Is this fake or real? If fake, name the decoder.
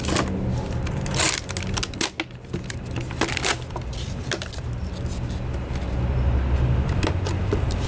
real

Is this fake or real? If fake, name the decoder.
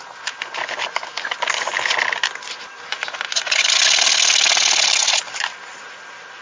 real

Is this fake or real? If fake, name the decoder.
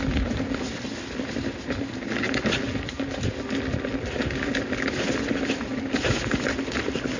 real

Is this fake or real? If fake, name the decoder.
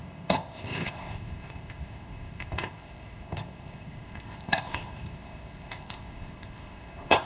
fake, codec, ZipCodec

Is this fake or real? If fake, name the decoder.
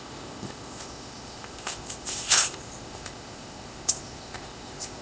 fake, codec, ZipCodec